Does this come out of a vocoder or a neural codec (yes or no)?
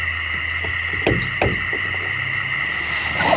no